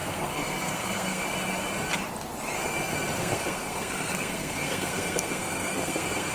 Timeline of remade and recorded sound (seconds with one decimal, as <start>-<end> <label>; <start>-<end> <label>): 0.0-1.2 remade; 1.2-3.2 recorded; 3.2-6.3 remade